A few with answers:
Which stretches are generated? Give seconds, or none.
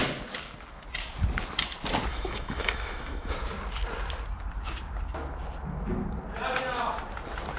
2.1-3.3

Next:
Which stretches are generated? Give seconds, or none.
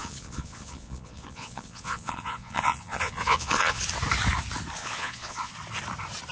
0.0-3.8; 4.8-5.5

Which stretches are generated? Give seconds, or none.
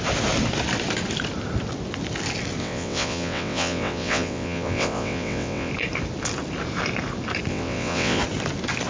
2.6-5.7; 7.5-8.2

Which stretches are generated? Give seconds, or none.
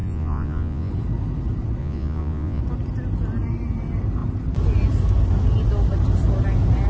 0.0-0.9; 1.8-2.6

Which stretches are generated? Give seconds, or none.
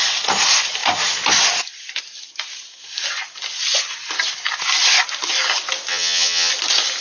5.9-6.5